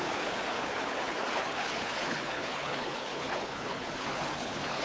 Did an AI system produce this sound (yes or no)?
yes